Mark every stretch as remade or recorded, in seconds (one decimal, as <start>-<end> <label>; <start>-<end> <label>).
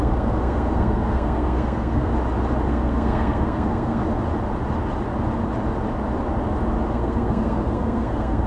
0.0-2.1 remade; 2.1-2.7 recorded; 2.7-4.0 remade; 4.0-6.9 recorded; 6.9-8.5 remade